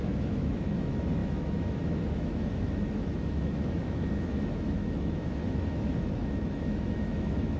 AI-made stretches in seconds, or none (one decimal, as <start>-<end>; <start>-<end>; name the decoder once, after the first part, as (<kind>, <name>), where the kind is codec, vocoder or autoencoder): 0.0-7.6 (autoencoder, DAC-VAE)